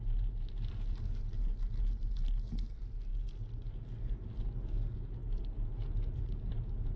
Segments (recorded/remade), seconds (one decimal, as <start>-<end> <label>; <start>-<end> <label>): 0.0-7.0 recorded